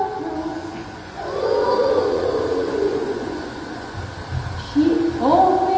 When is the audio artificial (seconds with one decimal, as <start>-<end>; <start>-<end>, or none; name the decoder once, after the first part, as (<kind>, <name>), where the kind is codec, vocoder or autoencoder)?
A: 0.5-4.0 (vocoder, Vocos)